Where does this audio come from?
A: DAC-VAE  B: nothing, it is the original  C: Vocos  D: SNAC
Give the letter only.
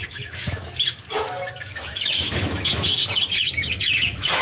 A